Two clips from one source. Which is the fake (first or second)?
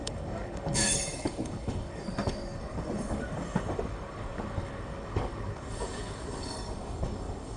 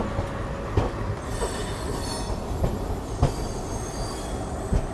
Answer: first